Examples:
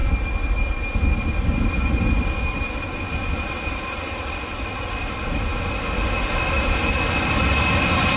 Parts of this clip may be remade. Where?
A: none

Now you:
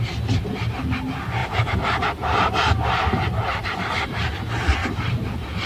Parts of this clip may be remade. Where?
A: 1.4-4.3 (vocoder, BigVGAN v2); 4.8-5.7

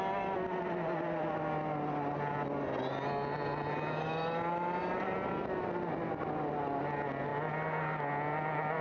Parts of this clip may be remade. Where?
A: none